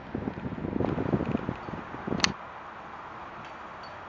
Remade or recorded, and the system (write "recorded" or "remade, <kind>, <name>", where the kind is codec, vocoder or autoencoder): recorded